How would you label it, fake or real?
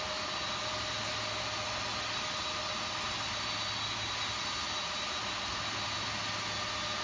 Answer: real